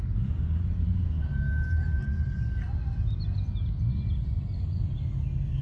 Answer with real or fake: real